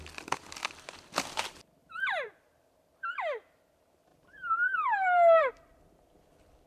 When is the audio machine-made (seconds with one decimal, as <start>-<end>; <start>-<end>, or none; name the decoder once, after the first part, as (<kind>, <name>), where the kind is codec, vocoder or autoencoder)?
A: 1.8-2.8 (vocoder, BigVGAN v2); 4.1-5.5